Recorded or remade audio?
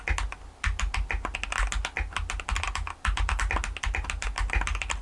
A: recorded